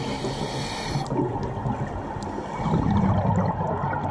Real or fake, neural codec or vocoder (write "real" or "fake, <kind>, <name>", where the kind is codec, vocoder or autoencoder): real